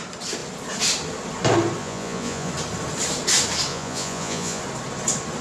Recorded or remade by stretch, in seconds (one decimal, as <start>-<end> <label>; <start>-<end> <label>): 0.0-1.8 recorded; 1.8-2.5 remade; 2.5-3.7 recorded; 3.7-4.6 remade; 4.6-5.4 recorded